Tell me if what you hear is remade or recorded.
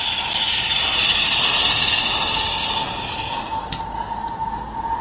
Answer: recorded